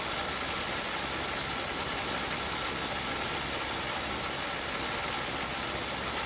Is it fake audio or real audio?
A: real